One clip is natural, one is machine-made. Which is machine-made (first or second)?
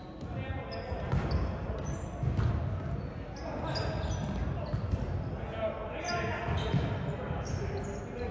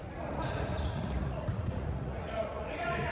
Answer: second